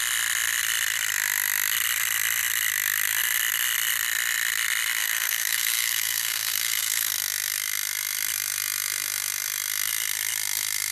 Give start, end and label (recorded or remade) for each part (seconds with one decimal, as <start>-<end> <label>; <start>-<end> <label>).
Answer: 0.0-5.0 recorded; 5.0-7.1 remade; 7.1-10.9 recorded